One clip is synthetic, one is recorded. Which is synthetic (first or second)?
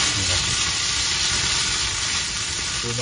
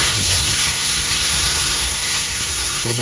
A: second